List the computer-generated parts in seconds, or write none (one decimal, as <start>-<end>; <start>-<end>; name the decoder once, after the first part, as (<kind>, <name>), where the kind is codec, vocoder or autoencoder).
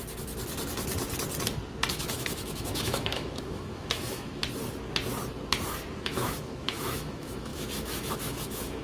1.9-4.4 (autoencoder, DAC-VAE); 6.0-8.8